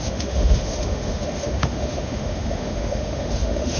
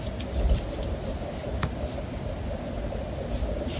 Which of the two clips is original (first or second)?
second